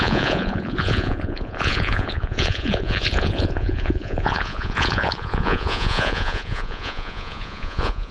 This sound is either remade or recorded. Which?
remade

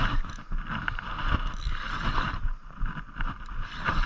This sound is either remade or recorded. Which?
recorded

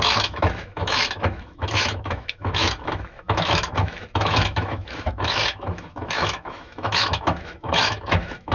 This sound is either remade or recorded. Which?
remade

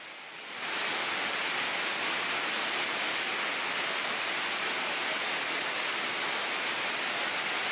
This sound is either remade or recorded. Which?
recorded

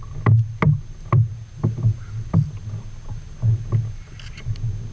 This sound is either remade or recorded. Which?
recorded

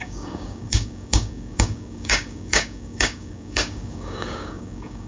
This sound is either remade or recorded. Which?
remade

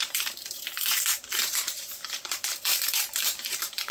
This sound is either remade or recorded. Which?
remade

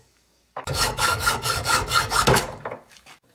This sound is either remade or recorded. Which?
remade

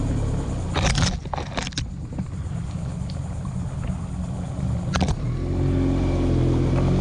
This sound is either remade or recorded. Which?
recorded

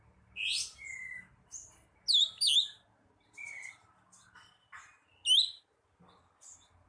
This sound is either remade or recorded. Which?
recorded